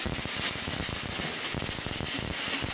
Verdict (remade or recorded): recorded